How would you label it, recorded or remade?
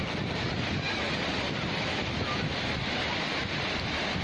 remade